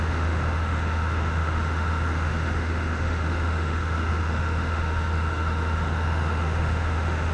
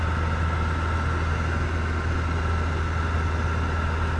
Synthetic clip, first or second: first